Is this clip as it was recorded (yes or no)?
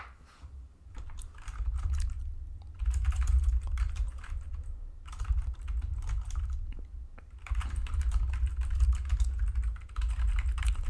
no